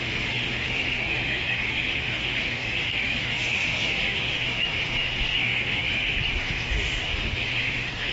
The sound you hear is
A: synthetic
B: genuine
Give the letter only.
A